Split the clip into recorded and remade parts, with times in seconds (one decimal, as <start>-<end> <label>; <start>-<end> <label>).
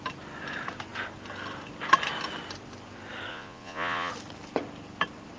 0.0-3.3 recorded; 3.3-4.1 remade; 4.1-5.4 recorded